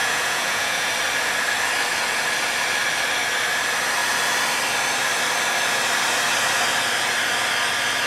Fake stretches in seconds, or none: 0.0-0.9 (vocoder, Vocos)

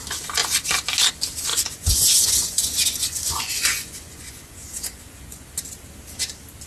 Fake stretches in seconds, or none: 1.5-5.5 (vocoder, Vocos)

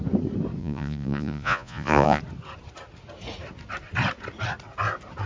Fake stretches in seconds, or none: 0.6-2.2 (vocoder, Vocos)